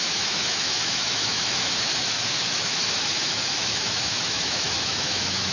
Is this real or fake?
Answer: fake